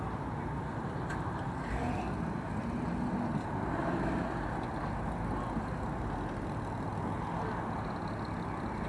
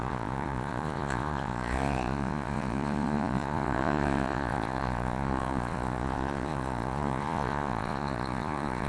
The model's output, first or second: second